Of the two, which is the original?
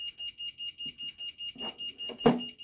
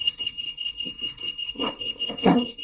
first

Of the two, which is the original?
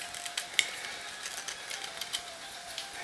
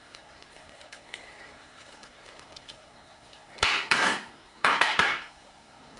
first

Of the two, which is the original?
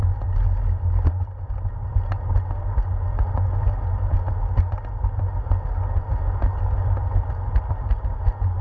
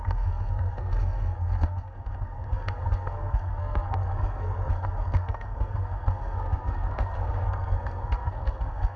first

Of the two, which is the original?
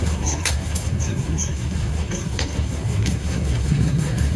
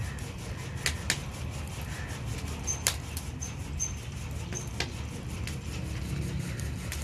second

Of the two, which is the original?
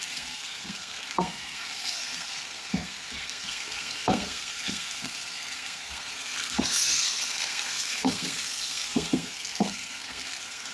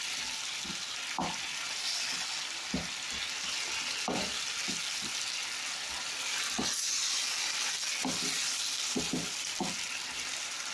second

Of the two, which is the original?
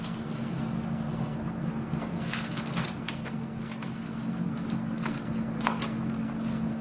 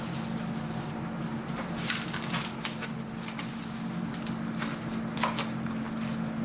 second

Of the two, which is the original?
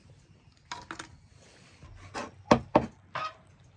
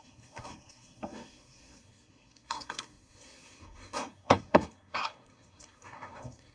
first